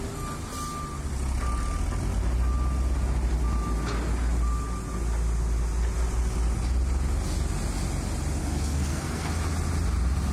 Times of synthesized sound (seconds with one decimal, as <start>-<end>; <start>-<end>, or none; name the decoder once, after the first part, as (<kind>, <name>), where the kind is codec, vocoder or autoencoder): 8.4-9.3 (codec, SNAC)